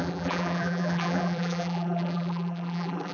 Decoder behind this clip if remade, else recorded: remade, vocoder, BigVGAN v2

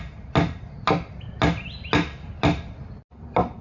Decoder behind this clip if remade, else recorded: recorded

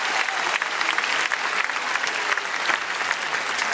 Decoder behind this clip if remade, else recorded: recorded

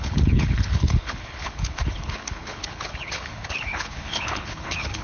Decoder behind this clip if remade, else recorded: remade, codec, HILCodec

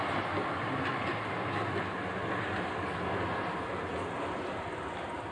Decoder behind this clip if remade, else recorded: recorded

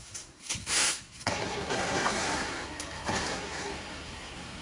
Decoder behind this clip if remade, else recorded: remade, codec, SNAC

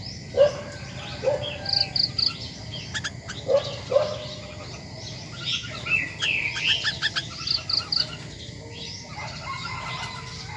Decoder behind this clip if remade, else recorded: recorded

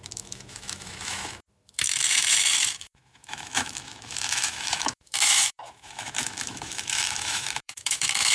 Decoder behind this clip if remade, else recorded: remade, autoencoder, DAC-VAE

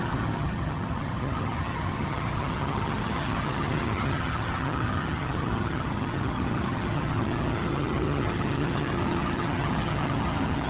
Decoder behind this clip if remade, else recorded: remade, vocoder, HiFi-GAN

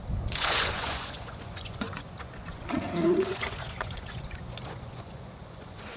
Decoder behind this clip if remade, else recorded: remade, vocoder, Vocos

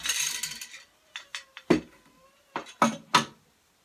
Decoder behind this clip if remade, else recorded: recorded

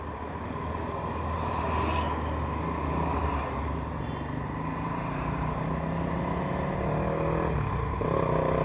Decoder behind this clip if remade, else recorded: recorded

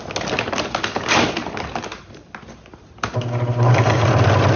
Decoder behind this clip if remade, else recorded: recorded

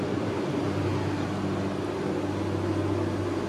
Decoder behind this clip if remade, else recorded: recorded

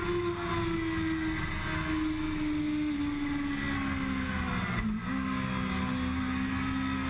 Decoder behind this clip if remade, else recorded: recorded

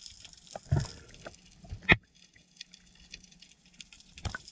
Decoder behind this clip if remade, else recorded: recorded